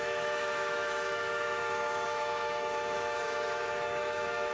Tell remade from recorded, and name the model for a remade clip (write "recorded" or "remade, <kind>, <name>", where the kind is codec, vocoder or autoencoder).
remade, autoencoder, DAC-VAE